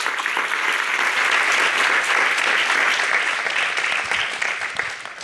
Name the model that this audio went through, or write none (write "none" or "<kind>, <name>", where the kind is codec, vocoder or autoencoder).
none